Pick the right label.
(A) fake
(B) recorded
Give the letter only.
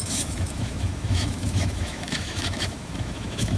A